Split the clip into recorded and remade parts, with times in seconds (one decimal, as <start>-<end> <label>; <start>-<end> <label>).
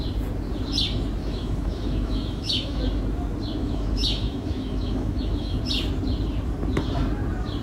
0.0-1.2 recorded; 1.2-2.8 remade; 2.8-3.6 recorded; 3.6-5.6 remade; 5.6-7.6 recorded